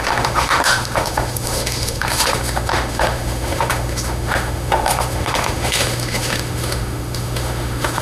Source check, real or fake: fake